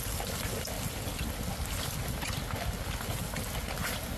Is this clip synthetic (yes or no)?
no